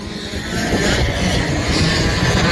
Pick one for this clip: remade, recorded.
remade